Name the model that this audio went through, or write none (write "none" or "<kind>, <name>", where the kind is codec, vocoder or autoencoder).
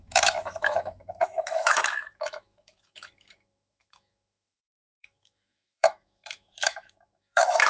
autoencoder, DAC-VAE